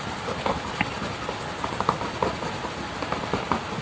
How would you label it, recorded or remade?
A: recorded